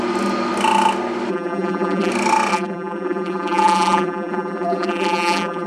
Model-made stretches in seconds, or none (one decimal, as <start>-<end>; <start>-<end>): 1.3-2.1; 2.5-5.7